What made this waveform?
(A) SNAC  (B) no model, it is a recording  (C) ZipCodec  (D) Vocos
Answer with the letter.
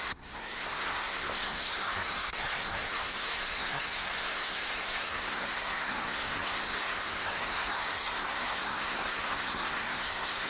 A